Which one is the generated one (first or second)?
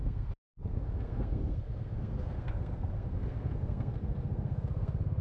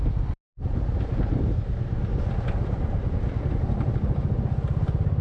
first